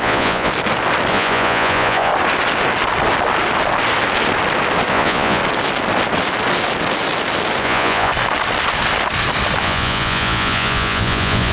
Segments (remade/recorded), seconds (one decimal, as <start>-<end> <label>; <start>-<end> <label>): 0.0-0.5 remade; 0.5-1.1 recorded; 1.1-2.1 remade; 2.1-4.9 recorded; 4.9-5.4 remade; 5.4-7.6 recorded; 7.6-8.1 remade; 8.1-9.6 recorded; 9.6-11.5 remade